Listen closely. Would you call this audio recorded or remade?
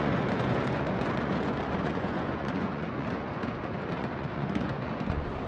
remade